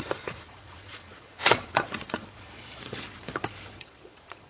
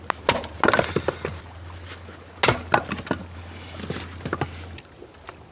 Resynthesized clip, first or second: first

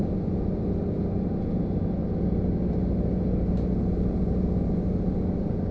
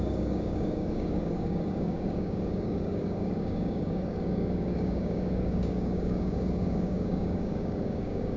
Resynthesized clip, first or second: second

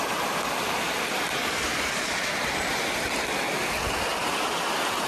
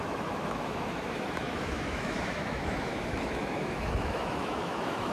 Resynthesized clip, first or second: second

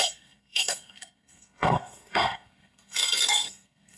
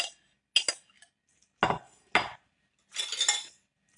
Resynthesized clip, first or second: first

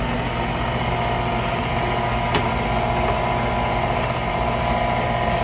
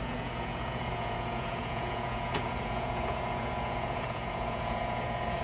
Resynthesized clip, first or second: second